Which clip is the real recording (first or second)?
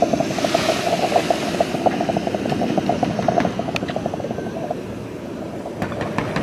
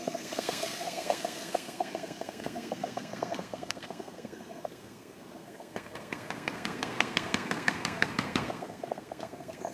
first